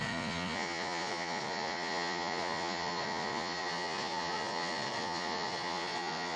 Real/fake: fake